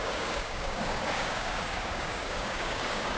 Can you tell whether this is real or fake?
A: fake